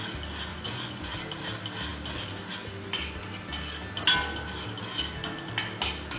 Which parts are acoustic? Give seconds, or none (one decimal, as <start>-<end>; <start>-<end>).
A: 0.0-0.5; 1.1-6.2